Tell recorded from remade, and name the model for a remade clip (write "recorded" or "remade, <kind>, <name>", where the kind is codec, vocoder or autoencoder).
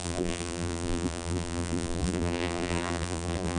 remade, vocoder, BigVGAN v2